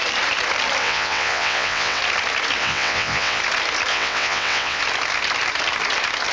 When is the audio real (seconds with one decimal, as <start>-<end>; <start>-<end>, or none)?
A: 0.0-0.8; 2.0-2.6; 3.4-3.9; 4.8-6.3